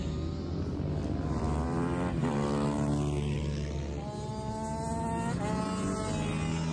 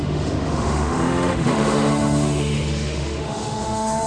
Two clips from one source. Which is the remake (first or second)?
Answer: second